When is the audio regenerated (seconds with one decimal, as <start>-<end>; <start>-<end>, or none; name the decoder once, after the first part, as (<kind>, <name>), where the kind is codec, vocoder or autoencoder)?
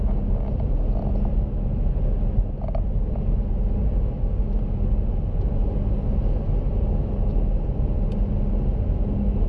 7.0-8.1 (vocoder, BigVGAN v2)